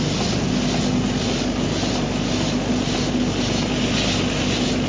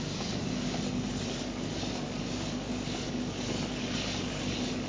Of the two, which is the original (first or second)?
first